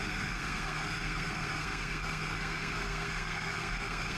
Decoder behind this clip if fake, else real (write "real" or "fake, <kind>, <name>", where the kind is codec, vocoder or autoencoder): fake, codec, SNAC